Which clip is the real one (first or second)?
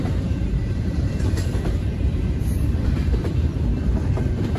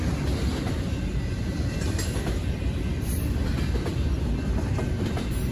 second